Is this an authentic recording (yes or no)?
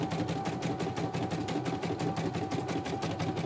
yes